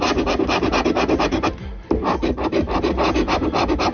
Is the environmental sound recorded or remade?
recorded